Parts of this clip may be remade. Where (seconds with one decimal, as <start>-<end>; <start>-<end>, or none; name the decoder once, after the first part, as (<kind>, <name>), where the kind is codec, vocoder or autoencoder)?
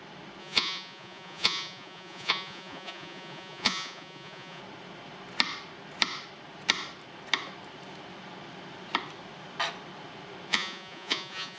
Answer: 0.4-4.6 (vocoder, Vocos); 10.5-11.6